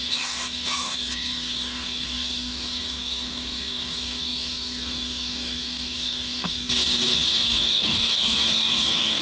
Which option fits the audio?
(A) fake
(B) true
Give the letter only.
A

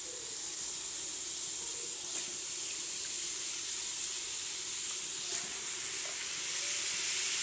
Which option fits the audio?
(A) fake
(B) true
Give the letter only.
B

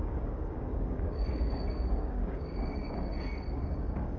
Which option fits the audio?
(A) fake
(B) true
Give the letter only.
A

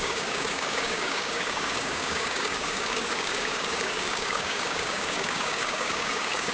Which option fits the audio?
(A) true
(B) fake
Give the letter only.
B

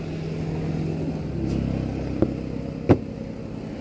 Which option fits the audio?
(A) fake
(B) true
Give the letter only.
B